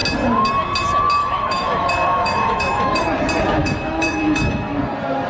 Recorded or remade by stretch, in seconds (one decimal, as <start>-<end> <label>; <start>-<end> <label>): 0.0-1.2 recorded; 1.2-3.0 remade; 3.0-3.6 recorded; 3.6-4.8 remade; 4.8-5.3 recorded

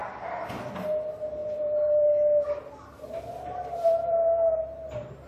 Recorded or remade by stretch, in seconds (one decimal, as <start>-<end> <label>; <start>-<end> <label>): 0.0-0.7 remade; 0.7-1.4 recorded; 1.4-4.6 remade; 4.6-5.3 recorded

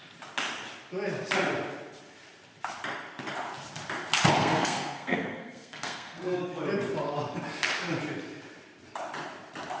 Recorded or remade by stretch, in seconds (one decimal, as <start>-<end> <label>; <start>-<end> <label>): 0.0-4.4 recorded; 4.4-6.4 remade; 6.4-9.8 recorded